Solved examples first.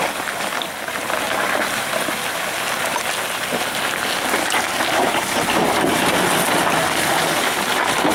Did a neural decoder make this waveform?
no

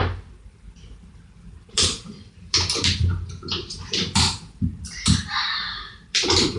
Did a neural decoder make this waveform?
yes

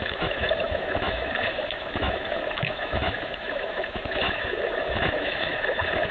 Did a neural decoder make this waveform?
yes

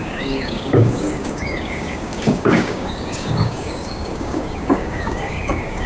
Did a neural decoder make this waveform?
yes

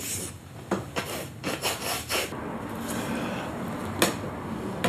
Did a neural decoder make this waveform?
no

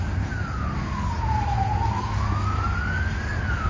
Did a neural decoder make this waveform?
no